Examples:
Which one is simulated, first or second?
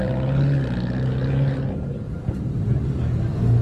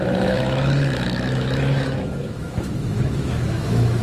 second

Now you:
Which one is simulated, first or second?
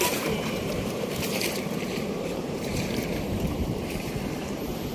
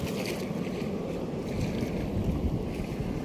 first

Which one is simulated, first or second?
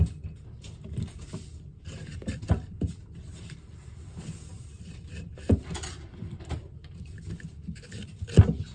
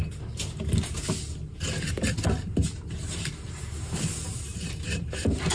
first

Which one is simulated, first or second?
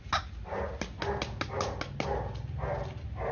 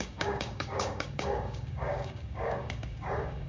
second